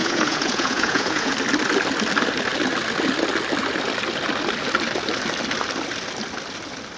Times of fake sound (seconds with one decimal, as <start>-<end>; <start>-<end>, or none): 0.0-1.3